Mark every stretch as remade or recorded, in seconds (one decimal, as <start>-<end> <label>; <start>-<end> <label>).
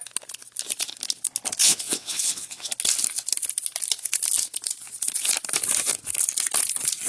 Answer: 0.0-1.6 recorded; 1.6-2.7 remade; 2.7-7.1 recorded